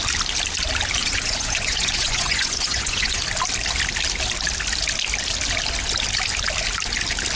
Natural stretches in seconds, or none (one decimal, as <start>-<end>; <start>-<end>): 0.0-1.0; 3.2-7.4